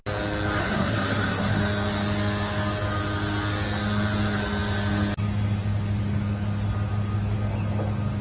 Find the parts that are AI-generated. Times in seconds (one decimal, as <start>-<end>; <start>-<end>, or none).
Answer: 0.6-1.6